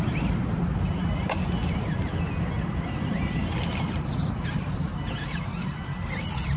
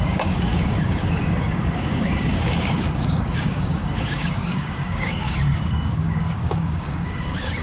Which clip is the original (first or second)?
first